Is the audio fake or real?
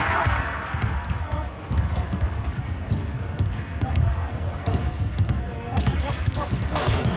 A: fake